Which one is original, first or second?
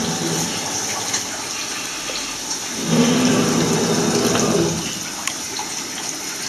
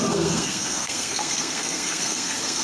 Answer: first